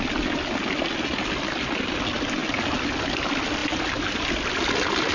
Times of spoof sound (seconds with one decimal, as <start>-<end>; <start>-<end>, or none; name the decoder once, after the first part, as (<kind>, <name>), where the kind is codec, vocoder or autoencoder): none